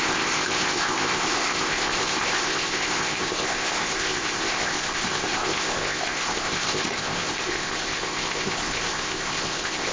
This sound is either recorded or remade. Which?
remade